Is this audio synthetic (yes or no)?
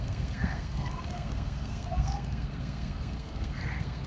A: yes